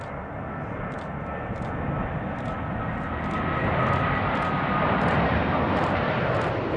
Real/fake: real